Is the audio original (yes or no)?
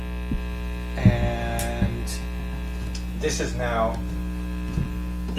yes